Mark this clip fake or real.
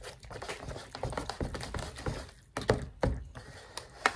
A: real